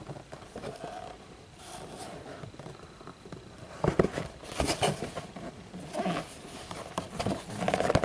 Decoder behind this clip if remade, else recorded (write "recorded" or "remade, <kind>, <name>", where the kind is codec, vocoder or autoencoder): recorded